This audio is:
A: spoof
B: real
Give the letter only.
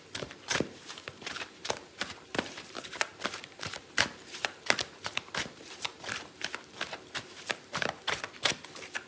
A